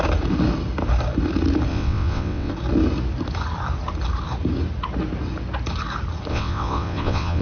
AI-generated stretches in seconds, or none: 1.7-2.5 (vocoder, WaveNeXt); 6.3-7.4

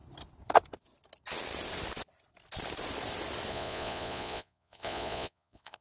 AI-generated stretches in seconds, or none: 3.5-5.8 (vocoder, Vocos)

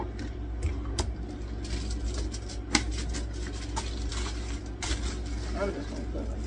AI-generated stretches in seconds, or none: none